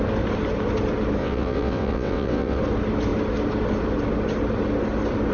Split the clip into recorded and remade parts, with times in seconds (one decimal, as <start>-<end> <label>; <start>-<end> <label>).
0.0-1.2 recorded; 1.2-2.6 remade; 2.6-5.3 recorded